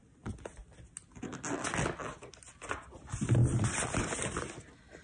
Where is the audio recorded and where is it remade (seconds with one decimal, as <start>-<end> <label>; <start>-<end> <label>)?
0.0-5.0 recorded